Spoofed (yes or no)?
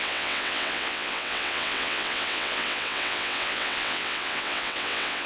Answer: yes